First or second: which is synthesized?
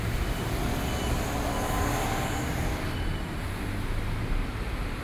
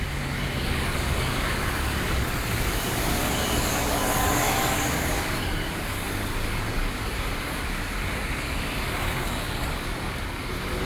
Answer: second